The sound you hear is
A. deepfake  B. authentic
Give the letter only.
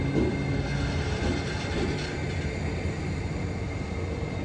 B